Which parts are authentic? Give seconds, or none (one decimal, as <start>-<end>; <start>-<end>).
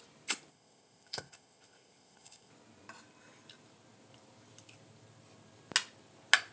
0.0-0.5; 2.5-6.5